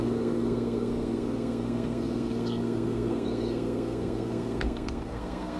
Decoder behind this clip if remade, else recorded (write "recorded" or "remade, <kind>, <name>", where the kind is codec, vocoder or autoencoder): remade, codec, SNAC